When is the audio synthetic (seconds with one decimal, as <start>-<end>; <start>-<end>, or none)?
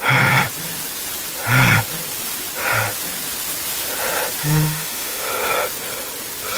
4.4-5.3